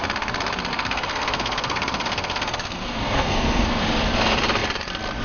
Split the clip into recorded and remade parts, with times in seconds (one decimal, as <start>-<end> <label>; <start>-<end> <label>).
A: 0.0-0.7 recorded; 0.7-3.8 remade; 3.8-5.2 recorded